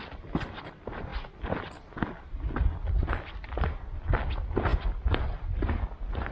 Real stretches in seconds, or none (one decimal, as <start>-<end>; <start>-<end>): 0.0-6.3